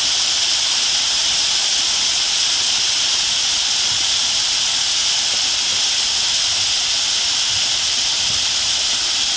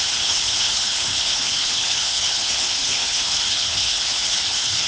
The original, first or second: first